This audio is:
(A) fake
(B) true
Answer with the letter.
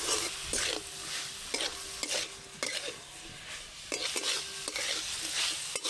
B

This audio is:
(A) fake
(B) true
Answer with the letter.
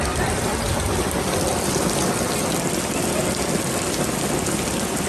B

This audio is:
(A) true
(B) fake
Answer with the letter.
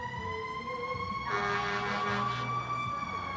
A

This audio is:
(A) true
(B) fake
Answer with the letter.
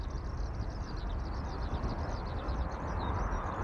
A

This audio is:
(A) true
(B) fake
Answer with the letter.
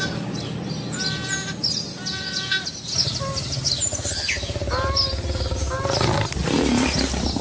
A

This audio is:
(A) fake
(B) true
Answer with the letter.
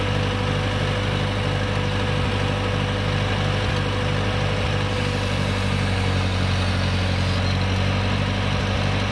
B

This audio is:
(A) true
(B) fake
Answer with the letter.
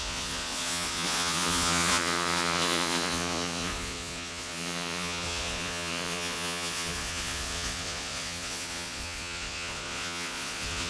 B